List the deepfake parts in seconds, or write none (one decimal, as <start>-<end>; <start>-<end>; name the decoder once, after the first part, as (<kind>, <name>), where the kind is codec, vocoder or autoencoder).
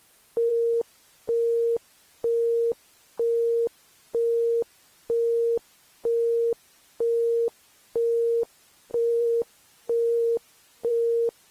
8.9-10.9 (vocoder, BigVGAN v2)